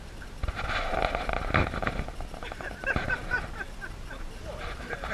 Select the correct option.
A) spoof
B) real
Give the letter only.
B